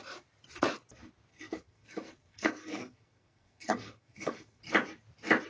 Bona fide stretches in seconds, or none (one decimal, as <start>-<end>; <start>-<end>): 0.0-1.3; 4.6-5.5